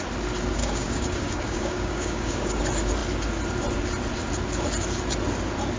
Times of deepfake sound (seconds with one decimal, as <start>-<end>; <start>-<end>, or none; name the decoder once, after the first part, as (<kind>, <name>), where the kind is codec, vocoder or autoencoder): 0.6-2.6 (codec, DAC)